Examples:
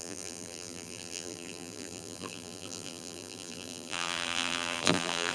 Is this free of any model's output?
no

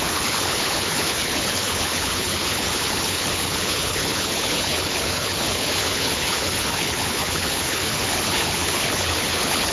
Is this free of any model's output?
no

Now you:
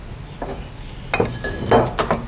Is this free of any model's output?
yes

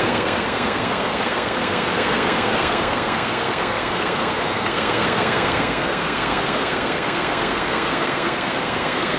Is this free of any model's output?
no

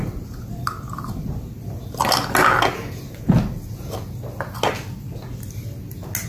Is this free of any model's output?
yes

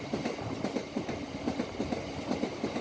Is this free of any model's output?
yes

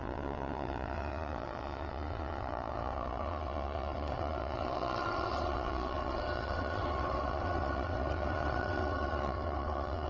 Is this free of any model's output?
no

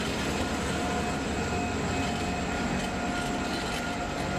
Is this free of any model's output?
yes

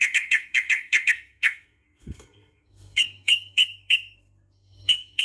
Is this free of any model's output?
no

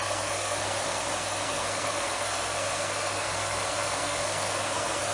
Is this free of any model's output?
no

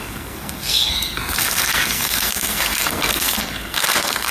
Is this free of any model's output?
no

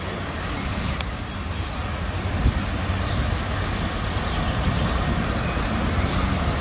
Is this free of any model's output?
yes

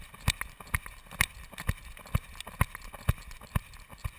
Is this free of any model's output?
yes